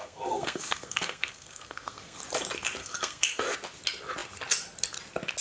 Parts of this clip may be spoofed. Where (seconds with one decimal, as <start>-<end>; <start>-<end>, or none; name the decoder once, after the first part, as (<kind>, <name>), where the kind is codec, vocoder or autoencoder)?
0.0-2.2 (codec, SNAC); 2.8-3.4